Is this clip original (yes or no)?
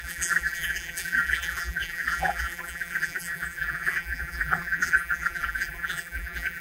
no